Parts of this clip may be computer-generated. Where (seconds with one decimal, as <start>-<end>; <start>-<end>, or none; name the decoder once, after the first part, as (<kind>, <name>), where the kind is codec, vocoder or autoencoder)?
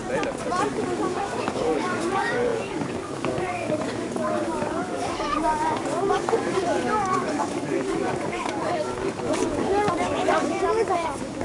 0.7-11.4 (codec, DAC)